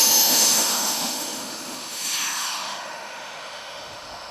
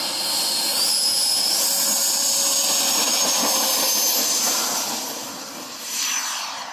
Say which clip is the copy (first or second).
first